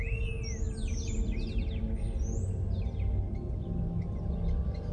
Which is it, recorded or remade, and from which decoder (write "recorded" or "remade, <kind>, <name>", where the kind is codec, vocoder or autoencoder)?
recorded